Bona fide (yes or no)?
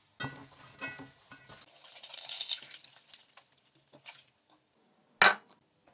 yes